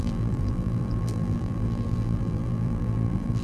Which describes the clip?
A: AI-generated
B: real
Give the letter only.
A